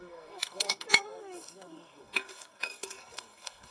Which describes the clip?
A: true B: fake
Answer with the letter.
B